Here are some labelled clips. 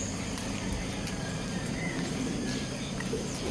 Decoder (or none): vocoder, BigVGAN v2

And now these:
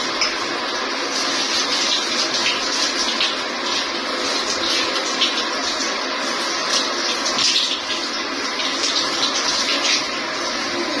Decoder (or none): none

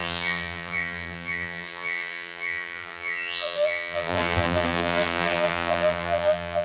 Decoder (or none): vocoder, BigVGAN v2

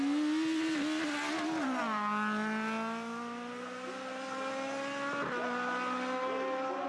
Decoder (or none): none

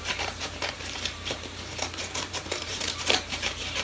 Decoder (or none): vocoder, BigVGAN v2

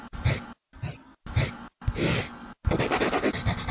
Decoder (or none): none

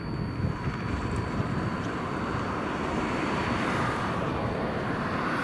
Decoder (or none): vocoder, BigVGAN v2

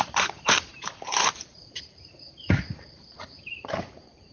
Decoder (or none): vocoder, BigVGAN v2